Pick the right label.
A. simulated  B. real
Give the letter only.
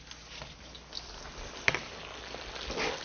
B